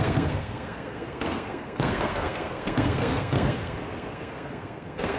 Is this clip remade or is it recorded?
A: remade